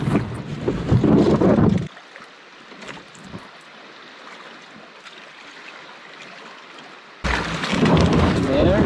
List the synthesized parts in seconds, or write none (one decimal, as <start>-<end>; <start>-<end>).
none